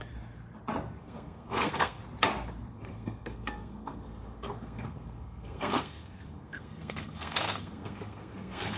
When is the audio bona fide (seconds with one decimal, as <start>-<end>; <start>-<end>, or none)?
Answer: 0.0-1.0; 2.0-2.7